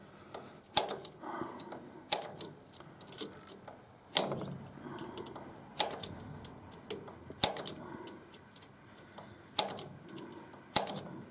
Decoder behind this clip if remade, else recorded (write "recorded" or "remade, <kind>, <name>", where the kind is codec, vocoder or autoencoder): recorded